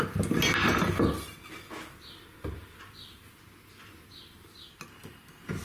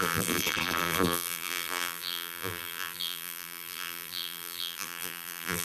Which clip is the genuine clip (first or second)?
first